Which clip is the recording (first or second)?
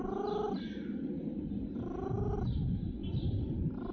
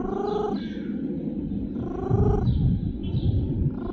second